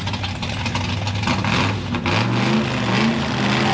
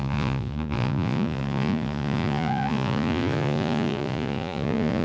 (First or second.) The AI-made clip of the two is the second